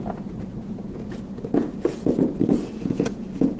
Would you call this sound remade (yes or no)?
yes